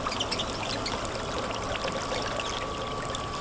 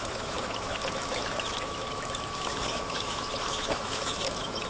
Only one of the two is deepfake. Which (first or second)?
second